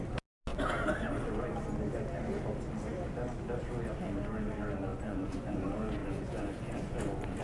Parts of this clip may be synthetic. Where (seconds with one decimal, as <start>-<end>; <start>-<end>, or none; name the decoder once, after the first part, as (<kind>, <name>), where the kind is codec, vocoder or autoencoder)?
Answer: 4.9-5.5 (vocoder, Vocos); 6.0-7.0